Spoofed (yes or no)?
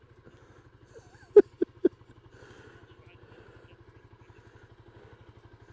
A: no